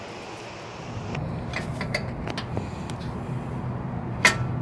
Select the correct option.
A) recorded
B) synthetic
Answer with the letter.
A